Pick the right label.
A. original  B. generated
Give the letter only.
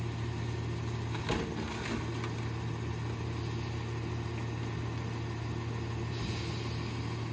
A